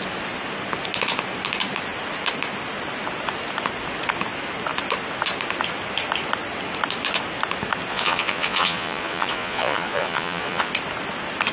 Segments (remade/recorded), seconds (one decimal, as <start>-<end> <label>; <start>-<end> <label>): 0.0-7.9 recorded; 7.9-10.7 remade; 10.7-11.5 recorded